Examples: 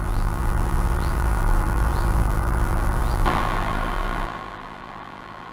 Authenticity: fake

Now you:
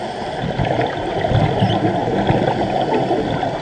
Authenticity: real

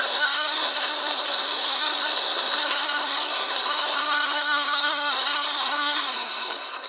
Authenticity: fake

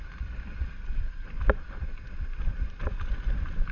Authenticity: real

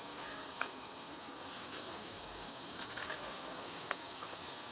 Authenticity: fake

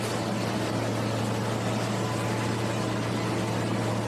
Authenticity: real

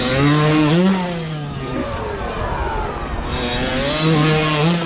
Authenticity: real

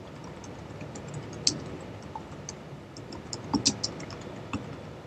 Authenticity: real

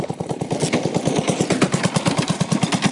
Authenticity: real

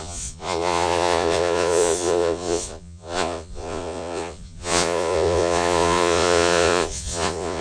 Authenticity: fake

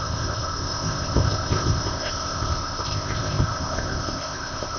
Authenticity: fake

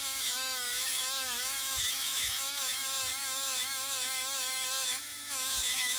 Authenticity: fake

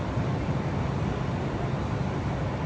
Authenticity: real